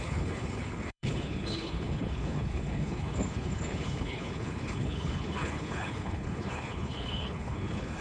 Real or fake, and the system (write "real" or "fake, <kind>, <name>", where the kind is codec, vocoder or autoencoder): fake, codec, HILCodec